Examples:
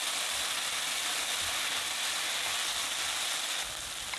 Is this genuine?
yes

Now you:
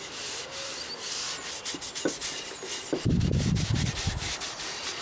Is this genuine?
yes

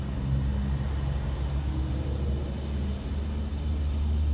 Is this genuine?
yes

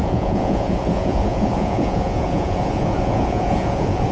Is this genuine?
no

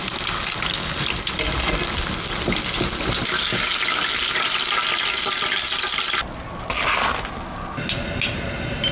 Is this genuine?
yes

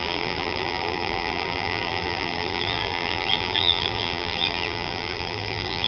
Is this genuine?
no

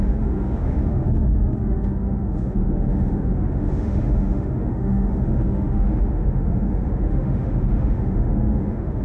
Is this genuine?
no